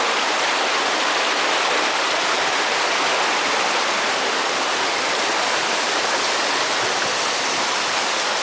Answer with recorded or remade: recorded